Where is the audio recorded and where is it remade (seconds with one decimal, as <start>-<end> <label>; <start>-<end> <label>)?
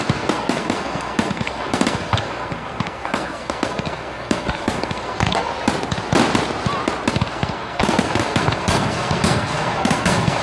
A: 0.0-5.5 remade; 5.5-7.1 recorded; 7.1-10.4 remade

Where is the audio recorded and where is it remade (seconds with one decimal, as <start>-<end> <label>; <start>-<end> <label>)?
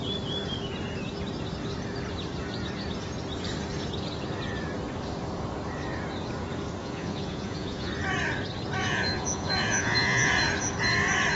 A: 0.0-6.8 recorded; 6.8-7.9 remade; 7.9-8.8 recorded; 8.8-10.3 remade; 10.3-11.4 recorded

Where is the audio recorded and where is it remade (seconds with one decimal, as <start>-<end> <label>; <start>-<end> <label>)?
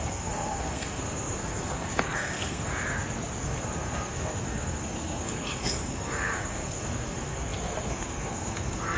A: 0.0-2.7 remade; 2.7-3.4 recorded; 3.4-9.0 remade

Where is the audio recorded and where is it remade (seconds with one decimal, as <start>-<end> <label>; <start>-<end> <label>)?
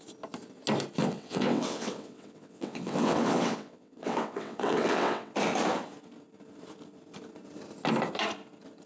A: 0.0-1.0 recorded; 1.0-5.3 remade; 5.3-8.9 recorded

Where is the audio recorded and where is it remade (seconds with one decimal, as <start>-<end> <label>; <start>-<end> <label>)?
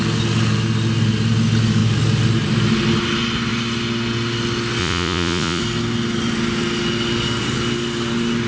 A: 0.0-4.8 recorded; 4.8-5.6 remade; 5.6-8.5 recorded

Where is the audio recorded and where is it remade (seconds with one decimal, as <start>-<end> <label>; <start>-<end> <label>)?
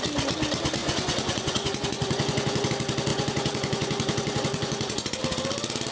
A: 0.0-0.8 recorded; 0.8-2.7 remade; 2.7-3.1 recorded; 3.1-5.2 remade; 5.2-5.9 recorded